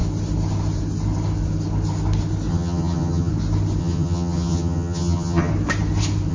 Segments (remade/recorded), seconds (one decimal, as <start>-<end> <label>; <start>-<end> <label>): 0.0-2.5 recorded; 2.5-3.3 remade; 3.3-3.8 recorded; 3.8-5.5 remade; 5.5-6.3 recorded